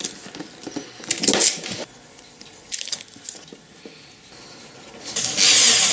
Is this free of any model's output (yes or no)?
yes